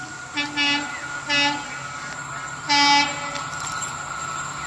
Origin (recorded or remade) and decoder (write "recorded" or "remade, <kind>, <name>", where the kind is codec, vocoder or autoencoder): recorded